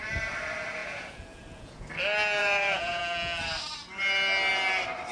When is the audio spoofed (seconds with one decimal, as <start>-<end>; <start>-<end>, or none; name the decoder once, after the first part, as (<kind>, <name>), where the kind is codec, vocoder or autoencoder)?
0.8-1.9 (vocoder, Vocos); 2.4-3.0